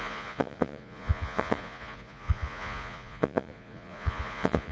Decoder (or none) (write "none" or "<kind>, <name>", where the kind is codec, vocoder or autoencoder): vocoder, Vocos